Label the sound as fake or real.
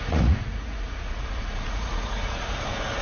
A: fake